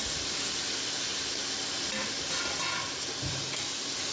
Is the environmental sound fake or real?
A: real